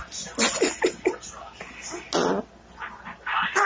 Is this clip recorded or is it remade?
recorded